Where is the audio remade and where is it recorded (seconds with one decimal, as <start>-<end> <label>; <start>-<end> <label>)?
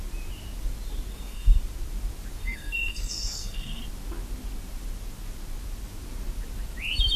0.0-1.1 recorded; 1.1-1.6 remade; 1.6-2.4 recorded; 2.4-3.8 remade; 3.8-7.2 recorded